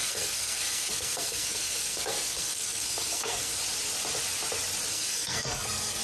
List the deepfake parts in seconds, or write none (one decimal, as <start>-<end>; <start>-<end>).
0.0-3.6; 4.9-6.0